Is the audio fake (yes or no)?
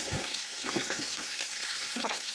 yes